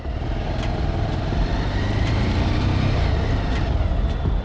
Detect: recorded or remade recorded